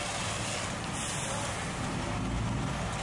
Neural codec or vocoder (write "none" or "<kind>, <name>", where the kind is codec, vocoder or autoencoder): none